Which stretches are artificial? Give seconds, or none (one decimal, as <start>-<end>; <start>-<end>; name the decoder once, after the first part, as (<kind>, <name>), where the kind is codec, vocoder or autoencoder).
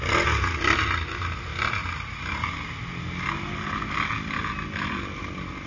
none